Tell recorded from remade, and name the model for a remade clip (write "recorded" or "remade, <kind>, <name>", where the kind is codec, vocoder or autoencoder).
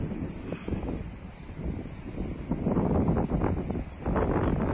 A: recorded